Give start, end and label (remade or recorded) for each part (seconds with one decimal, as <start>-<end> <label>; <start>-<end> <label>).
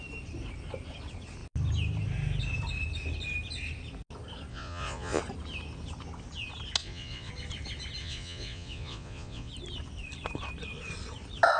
0.0-4.5 recorded; 4.5-5.2 remade; 5.2-6.8 recorded; 6.8-7.3 remade; 7.3-8.0 recorded; 8.0-9.5 remade; 9.5-11.6 recorded